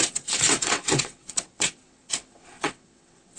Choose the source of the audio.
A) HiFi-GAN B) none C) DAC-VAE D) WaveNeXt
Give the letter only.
D